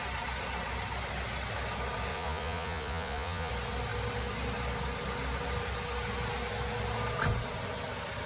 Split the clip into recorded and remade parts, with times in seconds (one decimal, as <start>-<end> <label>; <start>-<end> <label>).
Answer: 0.0-2.1 recorded; 2.1-3.5 remade; 3.5-8.3 recorded